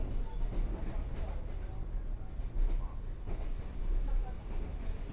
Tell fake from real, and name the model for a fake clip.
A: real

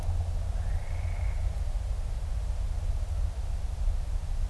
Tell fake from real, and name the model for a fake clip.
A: real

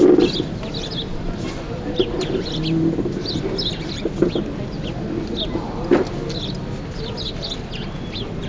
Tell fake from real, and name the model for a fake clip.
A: real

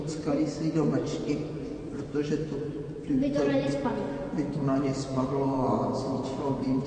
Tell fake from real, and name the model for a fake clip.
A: fake, vocoder, Vocos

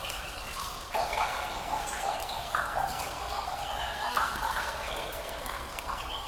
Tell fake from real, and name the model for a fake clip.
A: fake, codec, SNAC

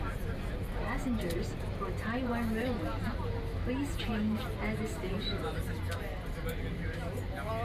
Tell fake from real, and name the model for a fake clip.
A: real